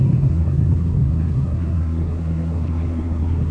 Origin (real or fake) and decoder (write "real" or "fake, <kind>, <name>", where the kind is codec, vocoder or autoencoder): fake, codec, SNAC